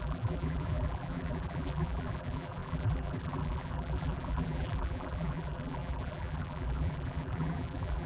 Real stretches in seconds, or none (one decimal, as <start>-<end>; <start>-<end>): none